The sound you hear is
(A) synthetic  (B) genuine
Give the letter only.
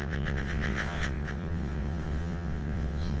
A